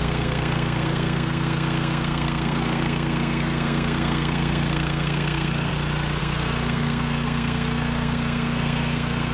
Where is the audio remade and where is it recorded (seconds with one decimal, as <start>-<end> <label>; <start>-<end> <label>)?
0.0-5.7 remade; 5.7-6.2 recorded; 6.2-9.3 remade

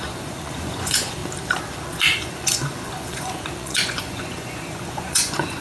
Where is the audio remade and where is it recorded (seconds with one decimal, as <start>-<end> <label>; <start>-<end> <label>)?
0.0-1.2 remade; 1.2-1.7 recorded; 1.7-5.6 remade

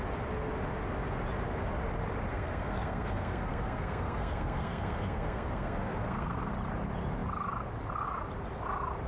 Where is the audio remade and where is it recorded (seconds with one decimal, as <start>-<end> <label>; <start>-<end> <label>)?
0.0-2.3 recorded; 2.3-6.5 remade; 6.5-9.1 recorded

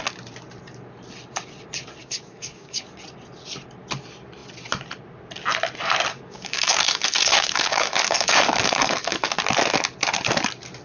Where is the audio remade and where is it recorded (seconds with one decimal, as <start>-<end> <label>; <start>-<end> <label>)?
0.0-2.0 recorded; 2.0-2.8 remade; 2.8-6.1 recorded; 6.1-9.4 remade; 9.4-10.8 recorded

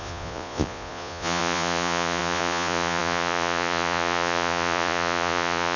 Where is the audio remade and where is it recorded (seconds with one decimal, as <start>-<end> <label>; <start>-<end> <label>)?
0.0-5.8 remade